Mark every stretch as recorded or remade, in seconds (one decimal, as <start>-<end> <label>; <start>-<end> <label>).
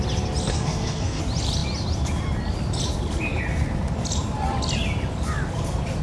0.0-0.5 recorded; 0.5-1.2 remade; 1.2-6.0 recorded